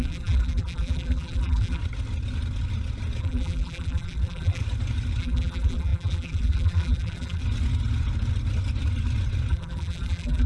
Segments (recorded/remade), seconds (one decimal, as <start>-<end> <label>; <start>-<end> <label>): 0.0-1.8 remade; 1.8-3.2 recorded; 3.2-4.6 remade; 4.6-5.2 recorded; 5.2-7.4 remade; 7.4-9.5 recorded; 9.5-10.5 remade